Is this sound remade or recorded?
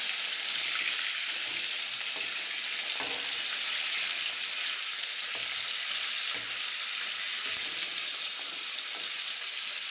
recorded